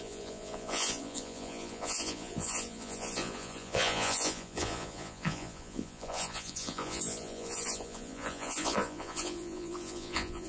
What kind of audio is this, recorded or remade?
remade